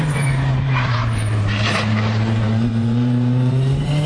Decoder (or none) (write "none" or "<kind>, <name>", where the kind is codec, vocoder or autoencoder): vocoder, BigVGAN v2